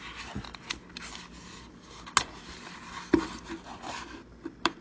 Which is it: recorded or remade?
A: recorded